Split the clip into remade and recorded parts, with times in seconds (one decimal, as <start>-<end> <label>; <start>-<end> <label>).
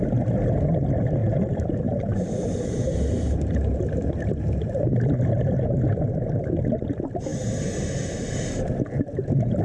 0.0-1.2 recorded; 1.2-4.3 remade; 4.3-9.6 recorded